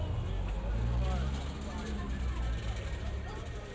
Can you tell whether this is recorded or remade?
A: recorded